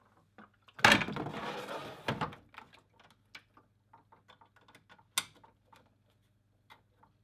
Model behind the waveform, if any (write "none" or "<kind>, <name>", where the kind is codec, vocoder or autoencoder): none